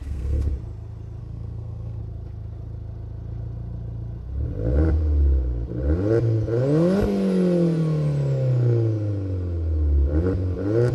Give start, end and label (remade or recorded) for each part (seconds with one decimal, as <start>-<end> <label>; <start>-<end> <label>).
0.0-0.5 remade; 0.5-1.2 recorded; 1.2-2.0 remade; 2.0-10.9 recorded